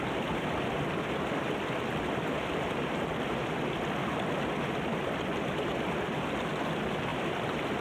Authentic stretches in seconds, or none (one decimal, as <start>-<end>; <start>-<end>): 0.0-7.8